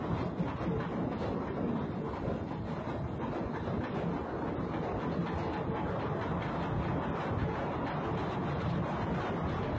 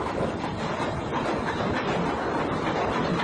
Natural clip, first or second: first